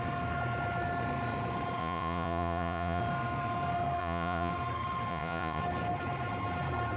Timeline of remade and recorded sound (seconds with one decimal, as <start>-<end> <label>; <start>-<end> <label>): 0.0-1.8 recorded; 1.8-3.0 remade; 3.0-4.0 recorded; 4.0-4.5 remade; 4.5-5.1 recorded; 5.1-5.6 remade; 5.6-7.0 recorded